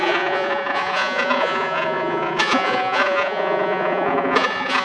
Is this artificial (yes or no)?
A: yes